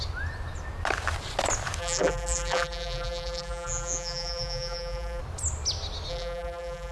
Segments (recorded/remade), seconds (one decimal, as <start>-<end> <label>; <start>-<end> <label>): 0.0-1.8 recorded; 1.8-5.2 remade; 5.2-6.1 recorded; 6.1-6.9 remade